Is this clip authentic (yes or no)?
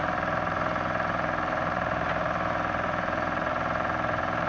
no